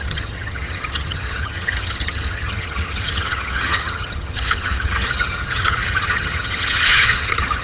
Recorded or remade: remade